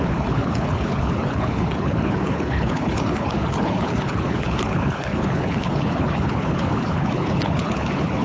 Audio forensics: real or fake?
fake